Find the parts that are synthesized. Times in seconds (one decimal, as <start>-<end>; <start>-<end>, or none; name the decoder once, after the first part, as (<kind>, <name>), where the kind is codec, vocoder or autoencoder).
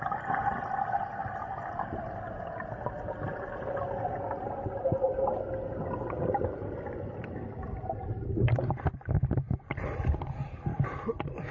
none